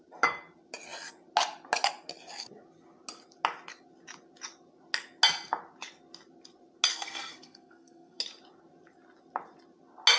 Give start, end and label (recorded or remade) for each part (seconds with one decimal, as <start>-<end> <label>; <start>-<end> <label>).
0.0-6.9 recorded; 6.9-8.2 remade; 8.2-10.2 recorded